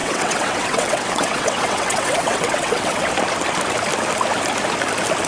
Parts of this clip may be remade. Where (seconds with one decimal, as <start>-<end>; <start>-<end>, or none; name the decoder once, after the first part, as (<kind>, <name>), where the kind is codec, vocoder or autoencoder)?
0.0-3.1 (vocoder, WaveNeXt)